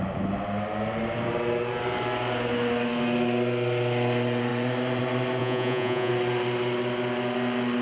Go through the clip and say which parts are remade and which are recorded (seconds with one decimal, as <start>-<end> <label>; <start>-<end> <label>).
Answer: 0.0-5.4 recorded; 5.4-6.1 remade; 6.1-7.8 recorded